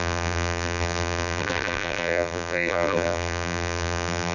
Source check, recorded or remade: remade